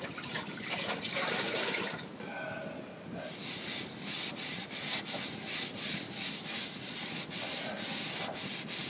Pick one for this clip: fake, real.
real